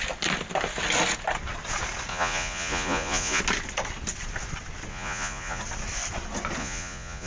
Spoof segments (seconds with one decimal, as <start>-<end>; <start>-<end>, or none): 2.1-3.4; 4.9-5.6; 6.6-7.3